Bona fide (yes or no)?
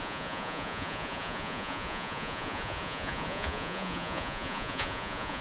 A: no